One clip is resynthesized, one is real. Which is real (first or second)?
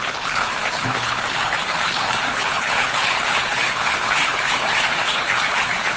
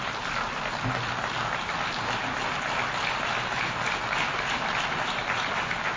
second